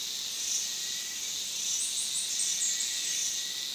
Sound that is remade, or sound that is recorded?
recorded